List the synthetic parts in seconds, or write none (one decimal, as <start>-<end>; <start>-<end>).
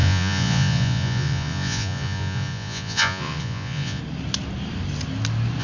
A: 0.0-4.0